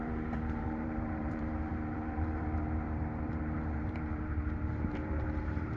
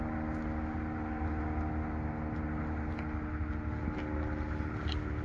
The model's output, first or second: first